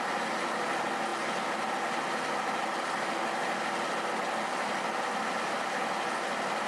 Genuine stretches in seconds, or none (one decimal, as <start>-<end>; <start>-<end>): 0.0-6.7